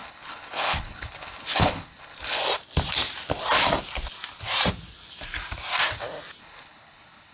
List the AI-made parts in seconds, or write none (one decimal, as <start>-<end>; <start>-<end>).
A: 0.0-2.4; 6.4-7.3